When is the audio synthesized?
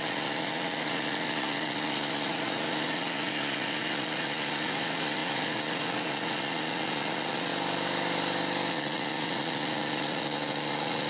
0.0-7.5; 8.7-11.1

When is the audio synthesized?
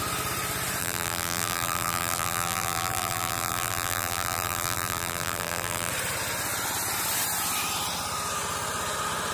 0.8-5.9